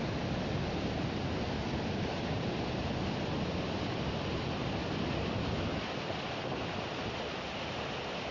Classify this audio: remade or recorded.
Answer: recorded